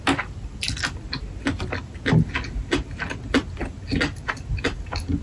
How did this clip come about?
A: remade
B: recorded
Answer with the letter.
B